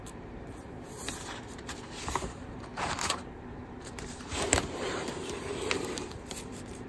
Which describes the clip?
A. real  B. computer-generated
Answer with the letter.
B